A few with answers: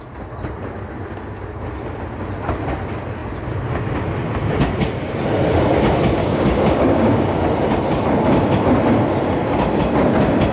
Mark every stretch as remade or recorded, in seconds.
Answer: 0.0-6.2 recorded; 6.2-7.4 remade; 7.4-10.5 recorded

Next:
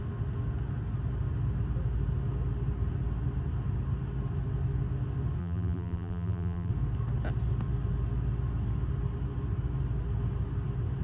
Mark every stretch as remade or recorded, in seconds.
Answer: 0.0-5.4 recorded; 5.4-6.7 remade; 6.7-11.0 recorded

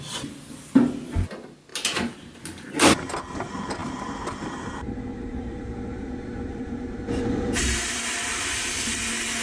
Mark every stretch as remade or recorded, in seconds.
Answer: 0.0-1.7 recorded; 1.7-2.7 remade; 2.7-3.8 recorded; 3.8-8.8 remade; 8.8-9.4 recorded

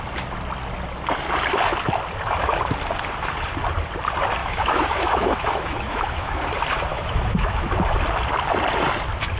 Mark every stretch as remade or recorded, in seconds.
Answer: 0.0-4.4 recorded; 4.4-6.4 remade; 6.4-6.9 recorded; 6.9-7.7 remade; 7.7-9.4 recorded

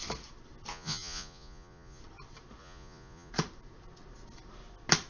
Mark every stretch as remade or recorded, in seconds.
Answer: 0.0-0.7 recorded; 0.7-2.0 remade; 2.0-2.6 recorded; 2.6-3.3 remade; 3.3-5.1 recorded

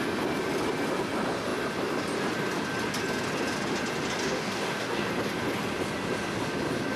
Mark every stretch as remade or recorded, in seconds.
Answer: 0.0-4.2 recorded; 4.2-5.1 remade; 5.1-7.0 recorded